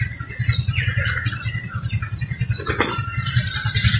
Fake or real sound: fake